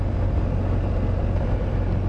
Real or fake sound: real